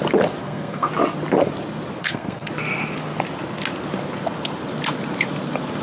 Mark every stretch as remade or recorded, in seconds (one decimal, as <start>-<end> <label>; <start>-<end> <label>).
0.0-0.4 recorded; 0.4-0.9 remade; 0.9-2.0 recorded; 2.0-2.5 remade; 2.5-5.8 recorded